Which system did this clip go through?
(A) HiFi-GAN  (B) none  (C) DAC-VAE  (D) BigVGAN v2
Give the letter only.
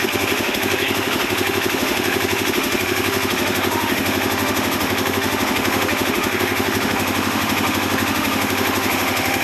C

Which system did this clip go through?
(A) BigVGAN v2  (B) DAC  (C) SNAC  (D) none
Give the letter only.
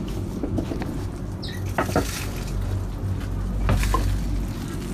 D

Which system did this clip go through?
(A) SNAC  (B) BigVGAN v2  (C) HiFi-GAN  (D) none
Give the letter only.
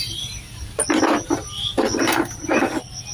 D